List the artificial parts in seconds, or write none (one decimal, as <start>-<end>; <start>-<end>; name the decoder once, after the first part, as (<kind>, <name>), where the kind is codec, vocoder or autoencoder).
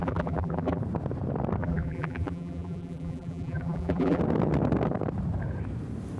0.0-0.8 (vocoder, BigVGAN v2); 1.6-4.2